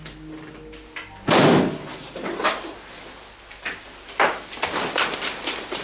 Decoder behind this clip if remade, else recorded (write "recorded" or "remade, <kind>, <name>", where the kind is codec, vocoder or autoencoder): recorded